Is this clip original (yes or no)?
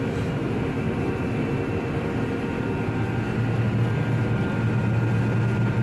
yes